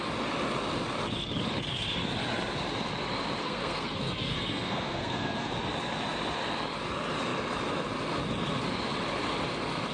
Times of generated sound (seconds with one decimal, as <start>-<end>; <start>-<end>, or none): 3.4-5.5